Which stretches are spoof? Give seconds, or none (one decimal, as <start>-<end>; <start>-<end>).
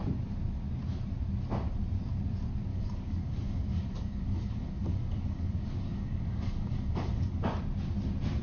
2.7-7.4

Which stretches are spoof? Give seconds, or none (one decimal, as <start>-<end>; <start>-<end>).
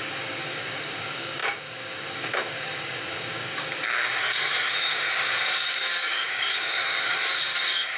0.0-8.0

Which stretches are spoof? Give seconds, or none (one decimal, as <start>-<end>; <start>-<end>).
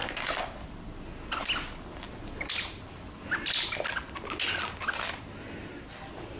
none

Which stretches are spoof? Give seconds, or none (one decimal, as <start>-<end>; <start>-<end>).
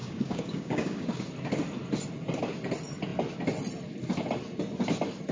0.0-1.2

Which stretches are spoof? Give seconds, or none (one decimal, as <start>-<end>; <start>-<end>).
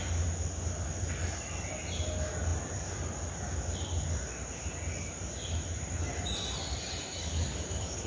7.2-8.1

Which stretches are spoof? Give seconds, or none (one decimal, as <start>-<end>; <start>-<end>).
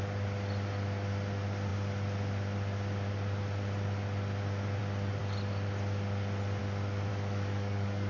7.1-8.1